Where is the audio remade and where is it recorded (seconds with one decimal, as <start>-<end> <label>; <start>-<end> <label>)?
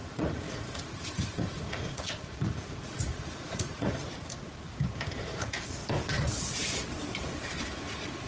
0.0-4.0 remade; 4.0-5.2 recorded; 5.2-5.8 remade; 5.8-8.3 recorded